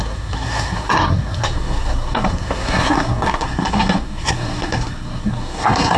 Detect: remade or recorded remade